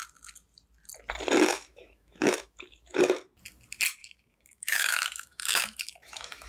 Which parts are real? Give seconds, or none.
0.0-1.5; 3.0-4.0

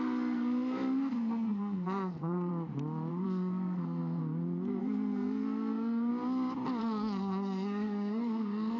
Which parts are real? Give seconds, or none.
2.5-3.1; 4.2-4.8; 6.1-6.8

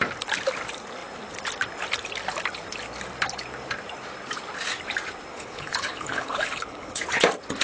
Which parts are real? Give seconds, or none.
0.0-5.3; 7.0-7.6

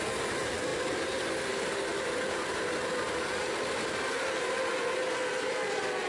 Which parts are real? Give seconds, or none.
1.9-5.1

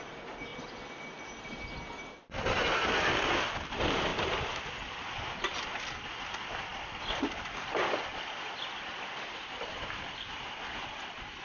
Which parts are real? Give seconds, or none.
0.0-4.1; 4.6-6.7; 9.7-11.4

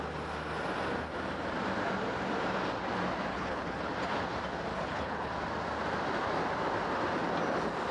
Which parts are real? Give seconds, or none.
0.0-3.3; 3.9-4.7; 5.3-7.9